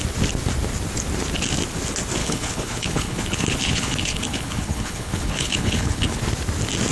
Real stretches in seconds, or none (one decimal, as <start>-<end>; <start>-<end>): 0.0-2.2; 6.2-6.9